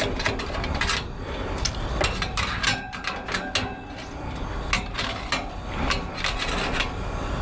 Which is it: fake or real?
real